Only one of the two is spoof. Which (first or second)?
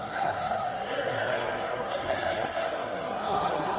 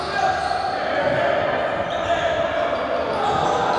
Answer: first